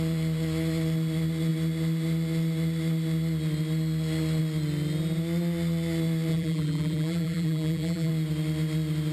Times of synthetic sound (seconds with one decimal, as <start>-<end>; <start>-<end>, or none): 6.3-8.1